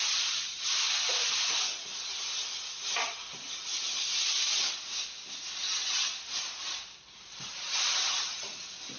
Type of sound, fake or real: real